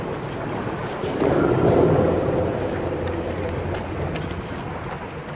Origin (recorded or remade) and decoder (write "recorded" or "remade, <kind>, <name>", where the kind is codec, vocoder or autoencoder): recorded